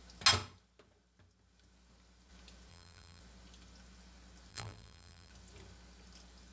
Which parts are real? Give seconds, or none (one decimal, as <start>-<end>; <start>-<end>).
0.0-2.7; 3.2-4.5; 5.3-6.5